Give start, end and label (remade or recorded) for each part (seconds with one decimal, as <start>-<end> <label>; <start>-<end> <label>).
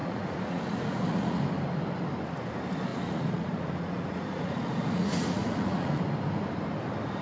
0.0-1.4 remade; 1.4-2.9 recorded; 2.9-6.0 remade; 6.0-7.2 recorded